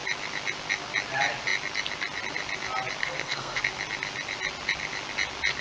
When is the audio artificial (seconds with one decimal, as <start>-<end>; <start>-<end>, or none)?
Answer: 3.0-3.6

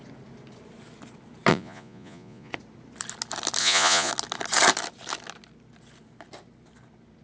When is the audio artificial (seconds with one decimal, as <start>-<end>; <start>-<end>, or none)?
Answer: 1.5-2.5; 3.6-4.1

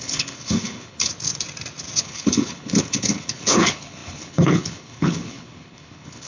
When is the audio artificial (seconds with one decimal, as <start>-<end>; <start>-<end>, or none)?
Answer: 0.0-1.1; 2.0-6.3

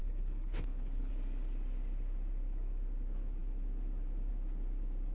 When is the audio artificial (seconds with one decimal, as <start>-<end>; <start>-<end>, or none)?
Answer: 0.0-1.1